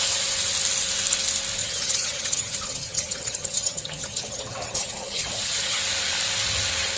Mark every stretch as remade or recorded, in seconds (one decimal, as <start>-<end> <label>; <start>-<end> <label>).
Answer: 0.0-1.6 recorded; 1.6-5.8 remade; 5.8-7.0 recorded